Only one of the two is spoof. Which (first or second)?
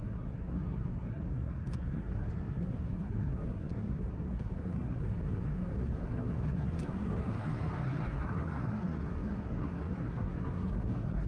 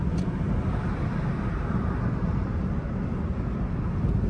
first